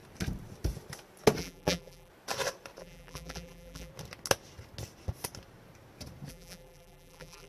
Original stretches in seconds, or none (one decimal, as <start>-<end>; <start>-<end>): 0.0-1.4; 2.1-2.8; 3.9-6.3